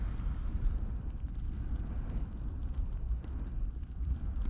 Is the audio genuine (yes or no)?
no